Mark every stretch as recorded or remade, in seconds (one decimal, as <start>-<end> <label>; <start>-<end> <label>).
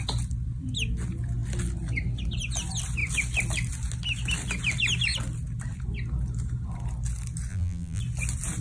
0.0-7.5 recorded; 7.5-8.0 remade; 8.0-8.6 recorded